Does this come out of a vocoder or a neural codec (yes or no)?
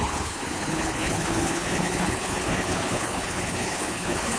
yes